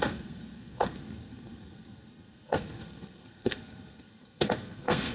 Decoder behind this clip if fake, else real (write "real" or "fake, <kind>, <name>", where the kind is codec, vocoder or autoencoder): fake, codec, SNAC